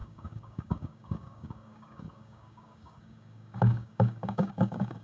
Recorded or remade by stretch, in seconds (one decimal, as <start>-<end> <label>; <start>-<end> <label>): 0.0-5.0 remade